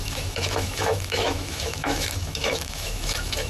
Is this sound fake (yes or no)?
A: yes